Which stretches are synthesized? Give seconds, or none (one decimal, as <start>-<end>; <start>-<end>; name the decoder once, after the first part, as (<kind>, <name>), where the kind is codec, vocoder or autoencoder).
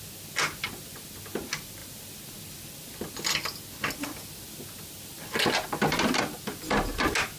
none